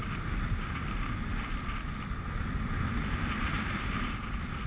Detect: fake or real real